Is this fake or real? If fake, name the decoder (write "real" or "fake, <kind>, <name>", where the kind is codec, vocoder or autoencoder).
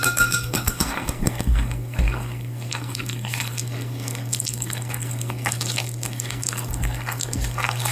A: fake, codec, SNAC